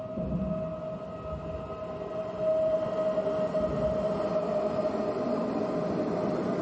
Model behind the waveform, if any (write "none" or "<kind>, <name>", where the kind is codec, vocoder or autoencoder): none